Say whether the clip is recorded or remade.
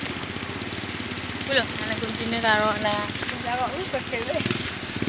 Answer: recorded